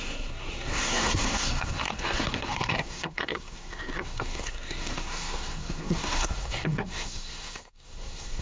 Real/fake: fake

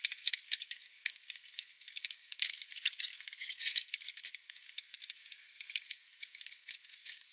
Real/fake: fake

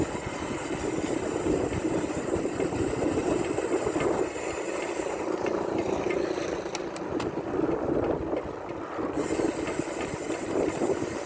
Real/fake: real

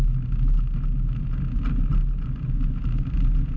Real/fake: real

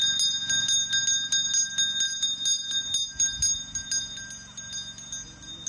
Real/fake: real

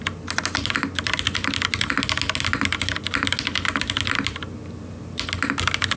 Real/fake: real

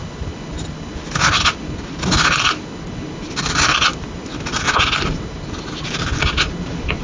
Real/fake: real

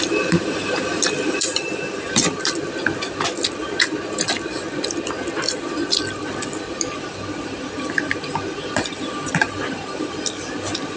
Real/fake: real